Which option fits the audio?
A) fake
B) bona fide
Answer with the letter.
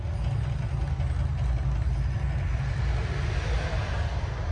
B